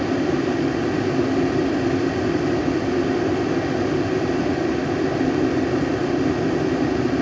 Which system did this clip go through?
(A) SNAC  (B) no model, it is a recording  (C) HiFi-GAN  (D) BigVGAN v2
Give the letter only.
B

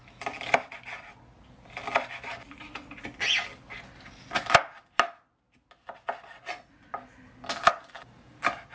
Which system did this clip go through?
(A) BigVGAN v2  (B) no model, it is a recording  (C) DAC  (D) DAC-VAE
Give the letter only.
B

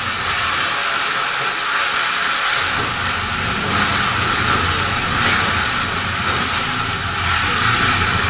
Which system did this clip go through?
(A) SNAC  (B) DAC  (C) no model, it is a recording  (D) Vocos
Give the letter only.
C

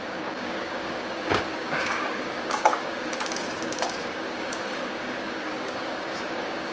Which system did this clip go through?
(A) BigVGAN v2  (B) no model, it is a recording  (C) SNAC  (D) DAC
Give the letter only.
D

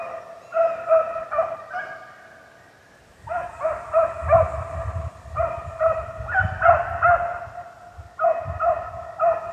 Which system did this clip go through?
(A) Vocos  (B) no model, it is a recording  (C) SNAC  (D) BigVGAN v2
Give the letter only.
B